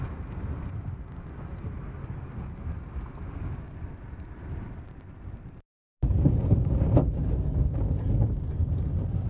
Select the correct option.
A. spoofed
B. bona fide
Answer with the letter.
B